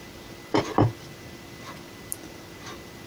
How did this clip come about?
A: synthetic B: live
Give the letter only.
B